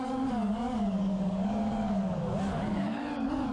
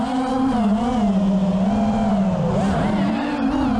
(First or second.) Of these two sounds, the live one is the second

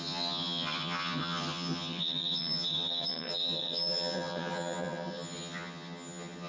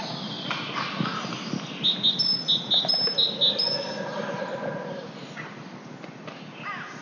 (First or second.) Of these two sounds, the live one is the second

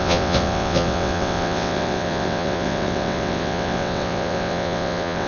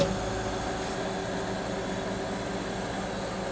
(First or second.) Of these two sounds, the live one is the second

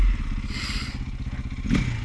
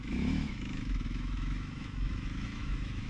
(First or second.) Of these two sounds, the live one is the first